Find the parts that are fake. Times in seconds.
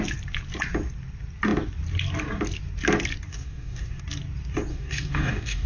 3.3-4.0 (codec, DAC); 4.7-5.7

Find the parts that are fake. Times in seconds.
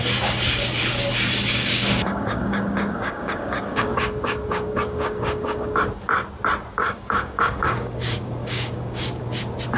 1.5-5.8 (codec, DAC); 6.7-9.2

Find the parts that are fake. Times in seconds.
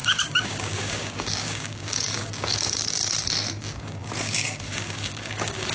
0.0-3.0 (codec, DAC); 3.6-5.7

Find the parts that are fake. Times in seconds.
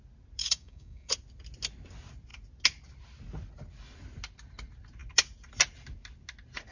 0.4-1.1 (codec, DAC)